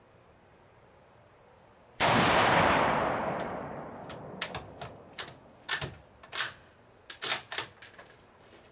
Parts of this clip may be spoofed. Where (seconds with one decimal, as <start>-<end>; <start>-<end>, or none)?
0.5-2.6; 3.2-3.9

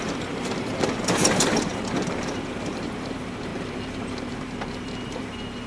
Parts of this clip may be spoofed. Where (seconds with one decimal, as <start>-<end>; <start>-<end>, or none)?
0.0-3.5; 4.3-5.7

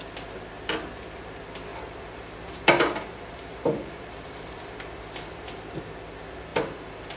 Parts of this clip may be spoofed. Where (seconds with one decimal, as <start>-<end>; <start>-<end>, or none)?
1.7-5.6; 6.5-7.2

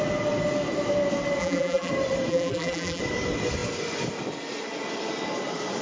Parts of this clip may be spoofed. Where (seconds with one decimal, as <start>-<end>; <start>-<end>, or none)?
1.4-1.9; 2.3-3.0